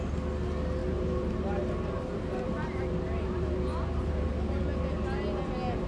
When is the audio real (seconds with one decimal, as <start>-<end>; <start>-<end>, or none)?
0.0-0.8; 4.3-5.9